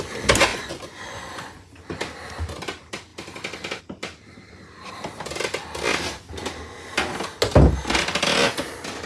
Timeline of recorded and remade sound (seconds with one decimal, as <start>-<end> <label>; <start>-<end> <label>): 0.0-0.5 recorded; 0.5-1.7 remade; 1.7-9.1 recorded